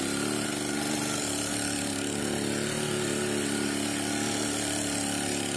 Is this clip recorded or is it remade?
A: recorded